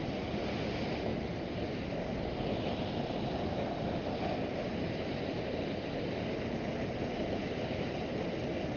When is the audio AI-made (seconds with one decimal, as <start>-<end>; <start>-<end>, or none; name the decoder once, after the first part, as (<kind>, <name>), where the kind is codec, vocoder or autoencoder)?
none